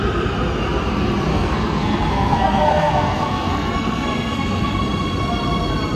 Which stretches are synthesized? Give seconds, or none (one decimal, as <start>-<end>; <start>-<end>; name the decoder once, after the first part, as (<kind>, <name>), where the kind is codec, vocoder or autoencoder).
1.3-4.8 (codec, SNAC)